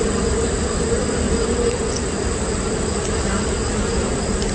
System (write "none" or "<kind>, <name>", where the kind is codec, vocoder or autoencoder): none